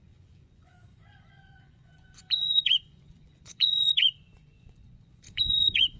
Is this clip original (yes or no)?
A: no